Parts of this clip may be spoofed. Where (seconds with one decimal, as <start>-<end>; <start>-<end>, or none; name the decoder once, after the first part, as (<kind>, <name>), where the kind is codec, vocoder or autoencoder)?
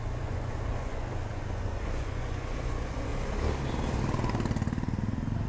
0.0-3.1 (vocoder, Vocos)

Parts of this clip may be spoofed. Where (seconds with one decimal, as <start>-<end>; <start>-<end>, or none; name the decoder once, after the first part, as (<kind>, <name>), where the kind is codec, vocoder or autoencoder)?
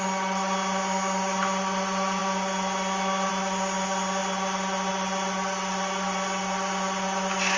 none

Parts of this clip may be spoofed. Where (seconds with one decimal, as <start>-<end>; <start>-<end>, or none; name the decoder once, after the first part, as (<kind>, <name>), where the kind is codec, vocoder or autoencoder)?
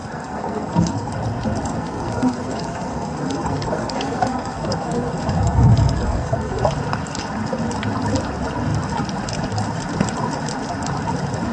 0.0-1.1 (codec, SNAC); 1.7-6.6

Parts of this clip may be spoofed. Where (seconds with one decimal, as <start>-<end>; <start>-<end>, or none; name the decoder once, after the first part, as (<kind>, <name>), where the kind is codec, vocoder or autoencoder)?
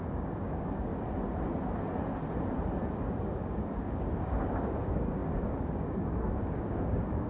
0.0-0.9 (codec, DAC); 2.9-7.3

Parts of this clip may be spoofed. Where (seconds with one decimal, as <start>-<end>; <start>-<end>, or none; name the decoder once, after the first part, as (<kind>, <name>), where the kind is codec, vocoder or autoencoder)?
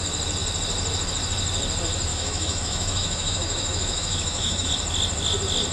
2.1-4.7 (autoencoder, DAC-VAE)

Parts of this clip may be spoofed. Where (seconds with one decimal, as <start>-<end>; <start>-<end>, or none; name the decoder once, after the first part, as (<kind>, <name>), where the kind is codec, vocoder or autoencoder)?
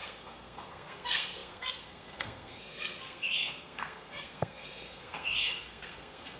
0.0-6.4 (codec, SNAC)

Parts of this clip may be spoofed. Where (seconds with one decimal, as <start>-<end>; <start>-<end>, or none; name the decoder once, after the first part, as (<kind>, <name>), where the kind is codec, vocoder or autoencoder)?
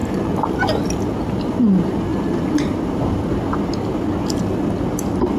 none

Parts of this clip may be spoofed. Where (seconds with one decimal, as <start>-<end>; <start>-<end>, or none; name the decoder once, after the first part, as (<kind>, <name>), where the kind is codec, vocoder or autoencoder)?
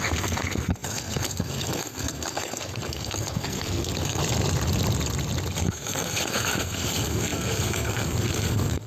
0.0-4.2 (codec, SNAC); 5.6-8.9